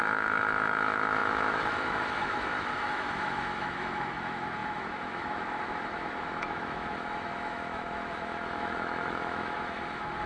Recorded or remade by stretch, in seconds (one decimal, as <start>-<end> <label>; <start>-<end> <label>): 0.0-10.3 remade